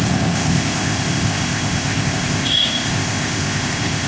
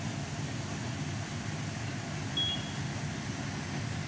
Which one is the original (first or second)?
second